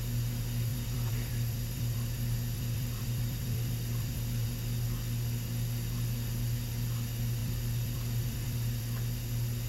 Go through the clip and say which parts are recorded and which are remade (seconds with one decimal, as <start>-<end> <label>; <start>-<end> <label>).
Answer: 0.0-0.7 recorded; 0.7-4.5 remade; 4.5-7.4 recorded; 7.4-8.8 remade; 8.8-9.7 recorded